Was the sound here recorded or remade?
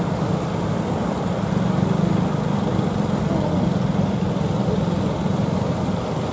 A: recorded